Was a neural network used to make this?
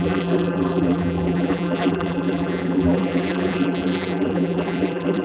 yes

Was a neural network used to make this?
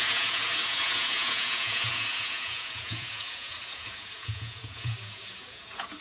yes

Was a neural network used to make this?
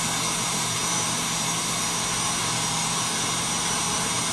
no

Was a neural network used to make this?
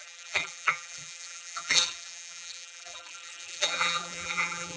yes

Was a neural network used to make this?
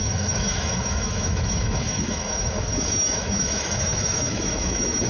yes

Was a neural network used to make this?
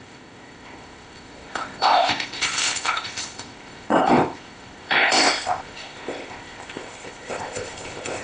yes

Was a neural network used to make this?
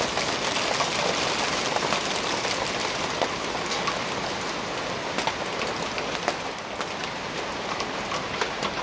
no